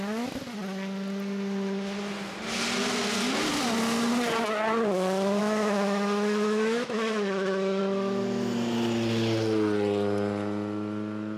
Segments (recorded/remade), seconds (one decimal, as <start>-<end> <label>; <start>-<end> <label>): 0.0-5.4 recorded; 5.4-7.8 remade; 7.8-11.4 recorded